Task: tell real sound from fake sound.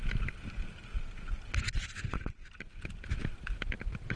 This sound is real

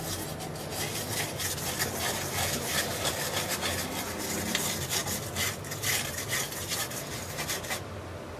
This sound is real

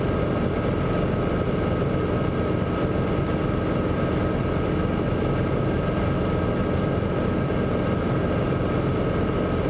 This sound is real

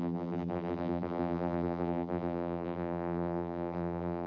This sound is fake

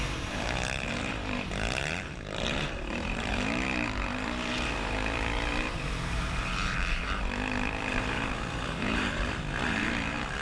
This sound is fake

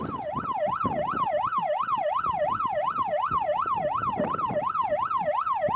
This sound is real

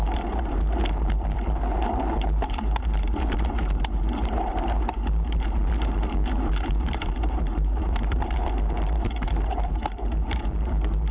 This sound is fake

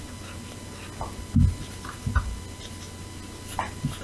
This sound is real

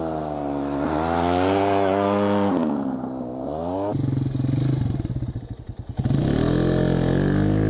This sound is real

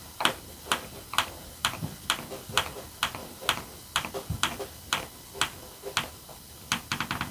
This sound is real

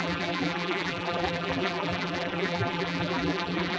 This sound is fake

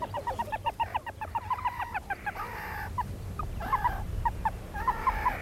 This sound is fake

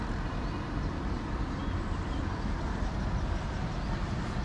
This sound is real